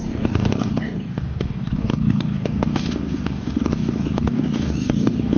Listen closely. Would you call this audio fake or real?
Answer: fake